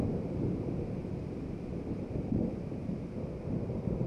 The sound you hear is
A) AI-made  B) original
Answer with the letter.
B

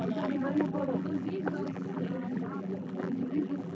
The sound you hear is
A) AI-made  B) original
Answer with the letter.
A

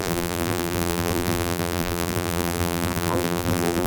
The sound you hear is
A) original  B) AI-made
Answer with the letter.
B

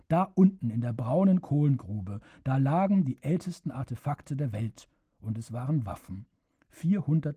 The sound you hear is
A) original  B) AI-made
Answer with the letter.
A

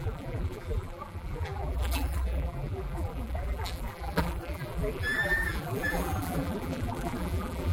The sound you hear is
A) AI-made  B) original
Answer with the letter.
A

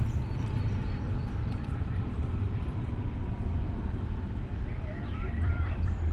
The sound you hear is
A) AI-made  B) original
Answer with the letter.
A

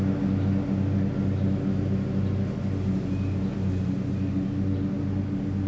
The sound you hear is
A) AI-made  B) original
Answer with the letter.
B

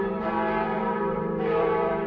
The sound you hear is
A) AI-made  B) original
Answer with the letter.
A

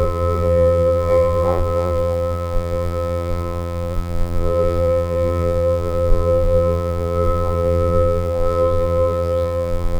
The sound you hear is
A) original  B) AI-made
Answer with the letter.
B